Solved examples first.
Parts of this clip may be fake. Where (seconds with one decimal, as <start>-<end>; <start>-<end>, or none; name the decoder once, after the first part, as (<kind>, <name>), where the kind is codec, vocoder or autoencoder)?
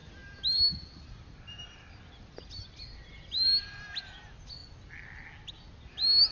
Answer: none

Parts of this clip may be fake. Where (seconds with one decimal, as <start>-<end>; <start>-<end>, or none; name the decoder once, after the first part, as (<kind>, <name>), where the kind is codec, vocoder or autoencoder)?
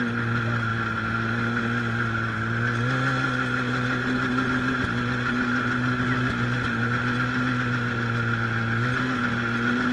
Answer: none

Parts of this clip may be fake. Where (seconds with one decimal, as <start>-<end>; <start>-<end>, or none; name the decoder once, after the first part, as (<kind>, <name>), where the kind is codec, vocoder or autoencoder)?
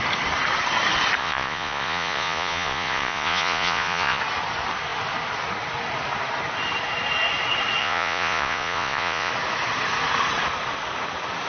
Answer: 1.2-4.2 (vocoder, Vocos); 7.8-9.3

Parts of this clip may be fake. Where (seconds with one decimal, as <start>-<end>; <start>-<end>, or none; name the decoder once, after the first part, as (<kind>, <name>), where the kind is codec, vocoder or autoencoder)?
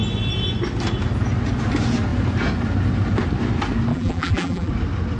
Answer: 3.9-4.7 (vocoder, BigVGAN v2)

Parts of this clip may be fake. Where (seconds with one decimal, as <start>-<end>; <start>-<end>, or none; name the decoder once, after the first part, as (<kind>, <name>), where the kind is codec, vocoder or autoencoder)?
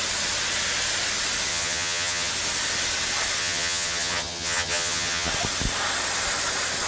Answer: 1.5-2.3 (vocoder, HiFi-GAN); 3.4-5.3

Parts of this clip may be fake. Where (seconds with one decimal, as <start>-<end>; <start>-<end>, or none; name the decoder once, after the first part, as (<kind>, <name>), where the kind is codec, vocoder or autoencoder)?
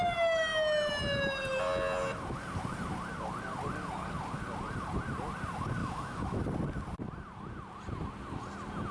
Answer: 5.8-6.4 (autoencoder, DAC-VAE)